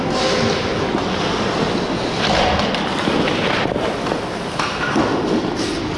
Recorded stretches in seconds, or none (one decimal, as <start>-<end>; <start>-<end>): 0.0-6.0